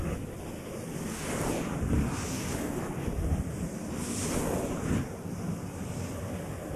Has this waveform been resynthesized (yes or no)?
no